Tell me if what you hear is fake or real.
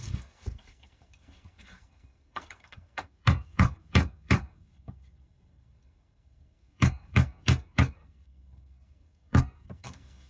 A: fake